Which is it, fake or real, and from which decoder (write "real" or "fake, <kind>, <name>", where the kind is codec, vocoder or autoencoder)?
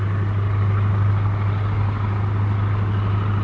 real